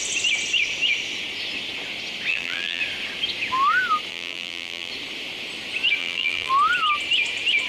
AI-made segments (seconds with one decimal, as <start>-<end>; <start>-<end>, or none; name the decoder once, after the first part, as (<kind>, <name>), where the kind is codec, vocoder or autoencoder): 2.3-2.8 (vocoder, BigVGAN v2); 4.1-4.9; 6.0-6.5